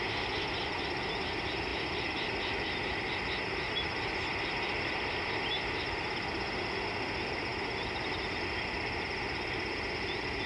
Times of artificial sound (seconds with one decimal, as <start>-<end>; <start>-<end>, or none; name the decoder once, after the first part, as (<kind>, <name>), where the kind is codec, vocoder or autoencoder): none